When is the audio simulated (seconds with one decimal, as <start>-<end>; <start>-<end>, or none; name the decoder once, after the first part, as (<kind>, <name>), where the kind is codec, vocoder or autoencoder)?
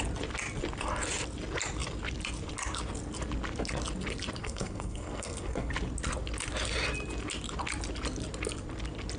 4.4-5.7 (codec, SNAC)